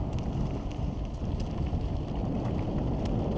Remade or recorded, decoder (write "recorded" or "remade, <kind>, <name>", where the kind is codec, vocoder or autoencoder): recorded